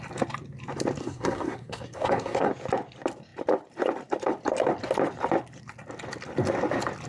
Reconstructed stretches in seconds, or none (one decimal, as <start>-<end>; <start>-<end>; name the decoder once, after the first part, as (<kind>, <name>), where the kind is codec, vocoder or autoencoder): 1.0-2.5 (codec, SNAC)